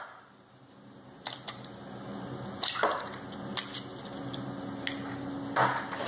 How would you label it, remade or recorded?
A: recorded